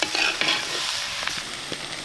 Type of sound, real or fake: real